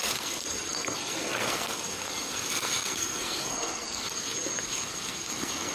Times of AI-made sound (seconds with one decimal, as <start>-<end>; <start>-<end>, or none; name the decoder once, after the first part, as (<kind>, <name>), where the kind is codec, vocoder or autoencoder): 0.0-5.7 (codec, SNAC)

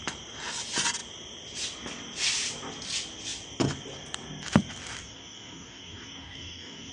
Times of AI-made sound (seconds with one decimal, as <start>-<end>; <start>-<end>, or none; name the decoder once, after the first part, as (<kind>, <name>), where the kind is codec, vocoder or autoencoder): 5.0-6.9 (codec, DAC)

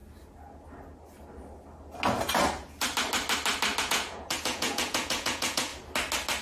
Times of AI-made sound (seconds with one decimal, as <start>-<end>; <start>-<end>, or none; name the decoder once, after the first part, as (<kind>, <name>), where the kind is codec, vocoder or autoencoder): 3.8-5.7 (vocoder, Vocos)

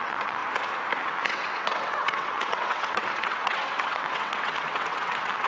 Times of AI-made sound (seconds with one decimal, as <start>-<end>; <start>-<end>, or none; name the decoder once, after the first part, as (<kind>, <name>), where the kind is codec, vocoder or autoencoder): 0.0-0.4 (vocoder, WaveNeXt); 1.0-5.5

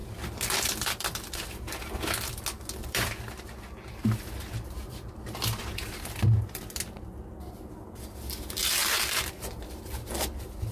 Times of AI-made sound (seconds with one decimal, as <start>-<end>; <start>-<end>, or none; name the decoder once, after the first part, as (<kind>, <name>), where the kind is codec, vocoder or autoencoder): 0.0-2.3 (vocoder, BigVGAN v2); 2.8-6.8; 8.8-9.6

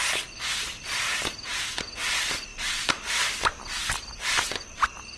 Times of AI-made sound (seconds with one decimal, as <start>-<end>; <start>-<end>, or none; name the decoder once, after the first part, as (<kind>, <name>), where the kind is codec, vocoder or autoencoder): 0.0-1.5 (vocoder, BigVGAN v2); 2.1-3.8; 4.5-5.2

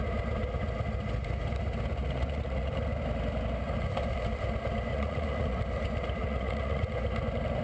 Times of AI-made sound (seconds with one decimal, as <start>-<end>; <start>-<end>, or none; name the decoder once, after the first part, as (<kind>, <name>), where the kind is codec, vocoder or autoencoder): 2.0-2.7 (vocoder, Vocos); 4.9-5.6; 6.2-6.9